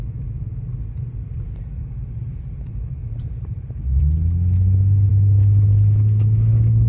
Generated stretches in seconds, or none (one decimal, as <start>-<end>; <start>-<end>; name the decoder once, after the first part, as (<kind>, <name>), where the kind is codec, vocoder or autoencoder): 3.0-4.0 (vocoder, BigVGAN v2)